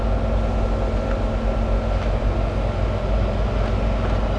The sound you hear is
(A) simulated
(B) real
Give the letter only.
B